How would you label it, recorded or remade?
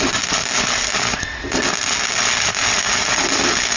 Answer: recorded